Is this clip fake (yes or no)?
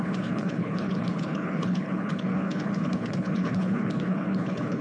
yes